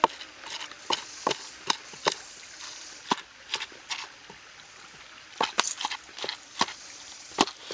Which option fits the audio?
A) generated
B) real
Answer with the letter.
B